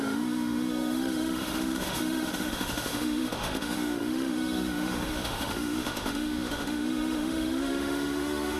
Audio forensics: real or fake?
fake